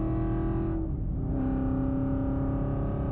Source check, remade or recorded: recorded